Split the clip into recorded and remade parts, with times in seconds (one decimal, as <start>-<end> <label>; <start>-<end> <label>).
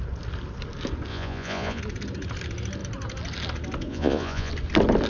0.0-1.1 recorded; 1.1-1.8 remade; 1.8-3.9 recorded; 3.9-4.5 remade; 4.5-5.1 recorded